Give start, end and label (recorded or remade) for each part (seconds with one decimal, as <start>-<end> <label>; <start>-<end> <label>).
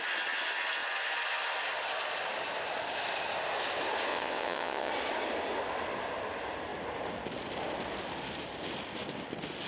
0.0-4.1 recorded; 4.1-4.9 remade; 4.9-9.7 recorded